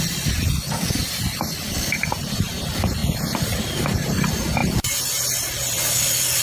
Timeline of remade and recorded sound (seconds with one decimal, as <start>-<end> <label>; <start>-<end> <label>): 0.0-6.4 recorded